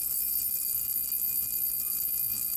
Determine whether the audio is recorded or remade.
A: recorded